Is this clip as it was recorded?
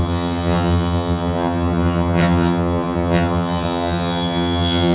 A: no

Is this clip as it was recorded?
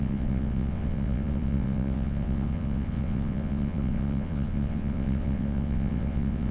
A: no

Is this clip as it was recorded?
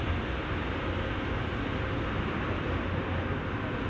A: yes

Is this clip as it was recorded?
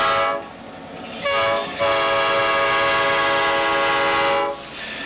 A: yes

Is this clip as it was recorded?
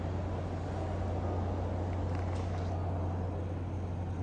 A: yes